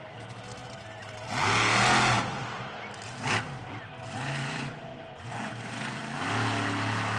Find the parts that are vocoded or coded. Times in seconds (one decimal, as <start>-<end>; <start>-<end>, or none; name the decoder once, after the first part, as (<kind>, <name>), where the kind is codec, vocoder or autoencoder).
4.4-6.0 (vocoder, Vocos)